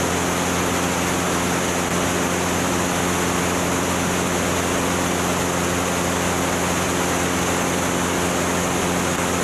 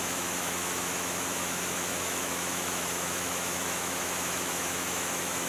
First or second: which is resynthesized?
second